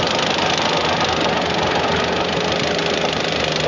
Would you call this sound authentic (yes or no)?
yes